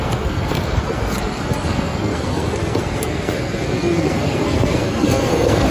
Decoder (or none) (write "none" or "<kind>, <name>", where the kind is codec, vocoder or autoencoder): codec, SNAC